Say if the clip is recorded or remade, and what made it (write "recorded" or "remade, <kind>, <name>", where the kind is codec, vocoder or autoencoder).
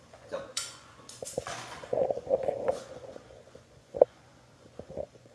remade, vocoder, Vocos